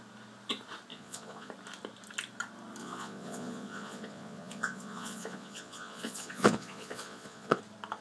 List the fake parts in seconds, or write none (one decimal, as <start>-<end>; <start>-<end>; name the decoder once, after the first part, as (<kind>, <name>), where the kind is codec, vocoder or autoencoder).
0.9-1.5 (vocoder, Vocos); 2.8-7.6